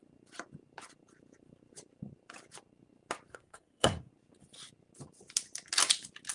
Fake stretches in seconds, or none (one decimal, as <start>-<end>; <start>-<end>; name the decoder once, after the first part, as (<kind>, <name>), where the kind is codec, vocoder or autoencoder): 3.3-4.1 (codec, SNAC)